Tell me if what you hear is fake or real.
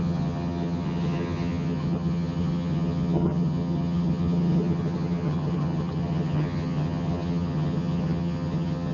fake